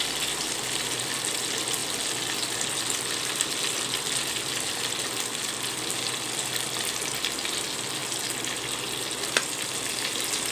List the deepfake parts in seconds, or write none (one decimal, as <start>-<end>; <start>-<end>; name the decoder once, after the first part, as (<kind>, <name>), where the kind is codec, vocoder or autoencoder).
none